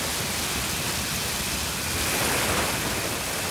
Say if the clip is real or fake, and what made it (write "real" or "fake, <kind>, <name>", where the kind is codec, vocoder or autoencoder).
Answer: real